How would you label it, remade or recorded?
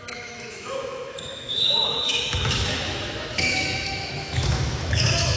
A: remade